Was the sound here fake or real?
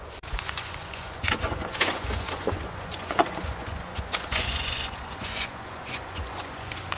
fake